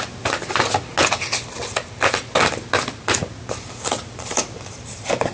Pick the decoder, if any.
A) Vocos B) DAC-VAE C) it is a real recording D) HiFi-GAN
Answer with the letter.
C